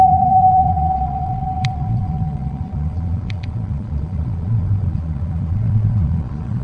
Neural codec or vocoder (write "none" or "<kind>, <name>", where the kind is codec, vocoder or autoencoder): vocoder, Vocos